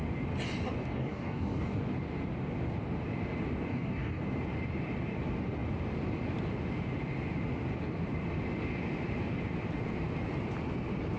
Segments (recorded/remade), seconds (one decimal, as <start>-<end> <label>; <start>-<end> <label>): 0.0-0.8 recorded; 0.8-1.8 remade; 1.8-3.7 recorded; 3.7-4.2 remade; 4.2-11.2 recorded